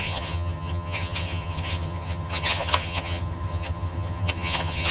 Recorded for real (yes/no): no